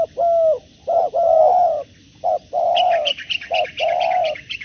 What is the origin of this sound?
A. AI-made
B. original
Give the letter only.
B